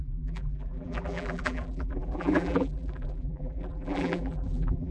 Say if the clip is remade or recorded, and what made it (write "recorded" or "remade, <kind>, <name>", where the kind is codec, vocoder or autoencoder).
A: remade, vocoder, BigVGAN v2